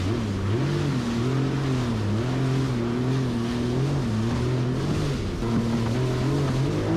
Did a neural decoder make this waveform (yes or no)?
no